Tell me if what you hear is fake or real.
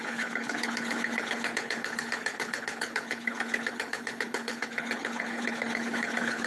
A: fake